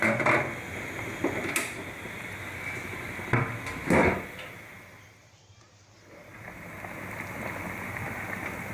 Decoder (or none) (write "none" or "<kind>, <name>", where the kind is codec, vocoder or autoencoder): none